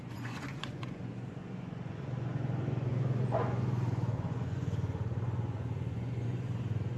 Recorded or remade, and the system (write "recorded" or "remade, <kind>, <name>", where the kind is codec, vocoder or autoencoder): remade, vocoder, Vocos